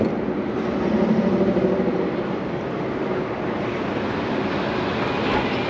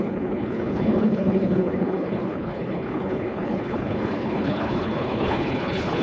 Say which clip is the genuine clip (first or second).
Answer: first